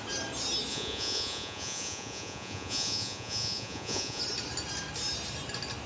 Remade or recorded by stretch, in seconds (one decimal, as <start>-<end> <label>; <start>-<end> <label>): 0.0-0.7 recorded; 0.7-4.2 remade; 4.2-5.9 recorded